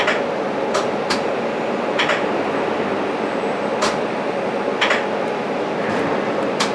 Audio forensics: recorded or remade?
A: recorded